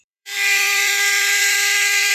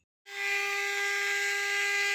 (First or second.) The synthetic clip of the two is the first